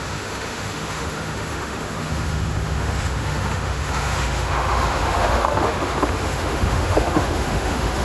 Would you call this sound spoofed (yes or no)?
yes